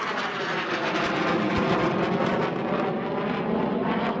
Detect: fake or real real